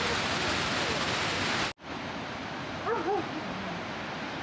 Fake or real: real